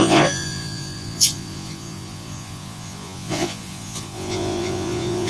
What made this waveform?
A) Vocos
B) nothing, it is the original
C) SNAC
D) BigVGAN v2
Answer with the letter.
A